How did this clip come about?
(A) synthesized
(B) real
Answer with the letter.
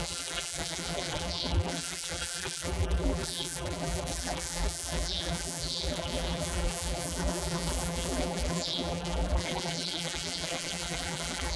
A